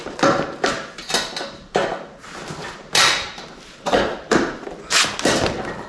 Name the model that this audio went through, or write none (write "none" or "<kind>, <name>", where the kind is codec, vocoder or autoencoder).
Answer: none